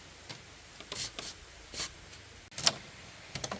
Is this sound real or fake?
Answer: real